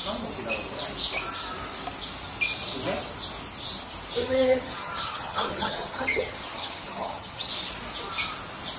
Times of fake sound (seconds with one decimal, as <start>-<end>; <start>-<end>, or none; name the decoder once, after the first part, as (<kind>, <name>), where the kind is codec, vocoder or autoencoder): 4.2-7.5 (vocoder, HiFi-GAN)